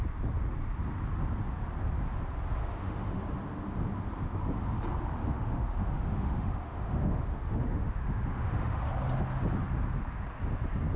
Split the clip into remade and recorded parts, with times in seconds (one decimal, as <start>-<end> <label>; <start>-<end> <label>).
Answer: 0.0-2.6 recorded; 2.6-3.2 remade; 3.2-5.2 recorded; 5.2-8.8 remade; 8.8-11.0 recorded